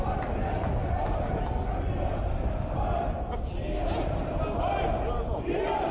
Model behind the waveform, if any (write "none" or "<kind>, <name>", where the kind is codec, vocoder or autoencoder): none